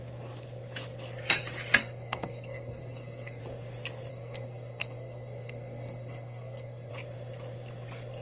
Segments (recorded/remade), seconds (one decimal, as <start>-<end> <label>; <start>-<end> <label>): 0.0-1.8 recorded; 1.8-3.4 remade; 3.4-4.1 recorded; 4.1-6.9 remade; 6.9-8.2 recorded